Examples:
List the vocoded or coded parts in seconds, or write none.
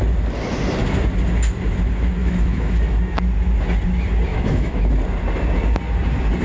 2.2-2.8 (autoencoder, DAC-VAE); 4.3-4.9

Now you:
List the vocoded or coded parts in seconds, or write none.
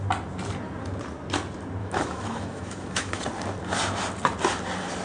1.8-3.2 (autoencoder, DAC-VAE)